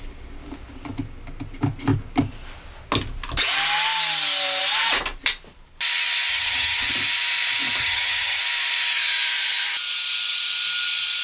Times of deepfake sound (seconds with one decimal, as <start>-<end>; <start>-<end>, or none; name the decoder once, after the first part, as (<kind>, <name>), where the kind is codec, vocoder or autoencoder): 6.3-6.9 (vocoder, HiFi-GAN); 7.8-8.4